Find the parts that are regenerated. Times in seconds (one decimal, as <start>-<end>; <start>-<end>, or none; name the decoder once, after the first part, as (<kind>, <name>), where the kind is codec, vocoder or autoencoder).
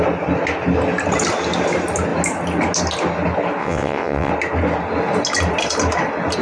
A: 3.6-4.3 (vocoder, WaveNeXt)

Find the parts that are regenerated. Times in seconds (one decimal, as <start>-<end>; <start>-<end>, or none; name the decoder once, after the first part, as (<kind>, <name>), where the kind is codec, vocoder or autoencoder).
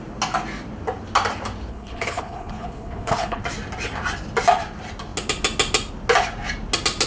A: 1.7-3.4 (codec, HILCodec)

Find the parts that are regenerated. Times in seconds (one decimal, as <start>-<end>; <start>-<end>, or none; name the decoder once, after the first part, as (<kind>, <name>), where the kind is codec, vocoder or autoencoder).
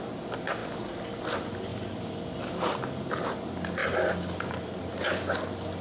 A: 0.6-1.2 (vocoder, BigVGAN v2); 1.7-2.4; 3.8-4.8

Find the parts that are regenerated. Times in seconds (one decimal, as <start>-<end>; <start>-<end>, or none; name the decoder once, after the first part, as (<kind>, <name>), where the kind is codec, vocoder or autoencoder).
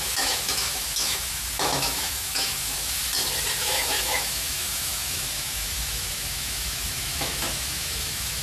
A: 0.0-3.0 (autoencoder, DAC-VAE); 3.6-8.4